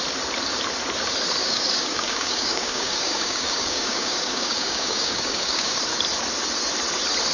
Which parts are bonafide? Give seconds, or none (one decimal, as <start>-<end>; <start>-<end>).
0.0-1.4; 5.8-7.3